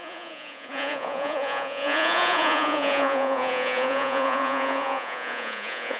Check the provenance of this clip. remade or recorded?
remade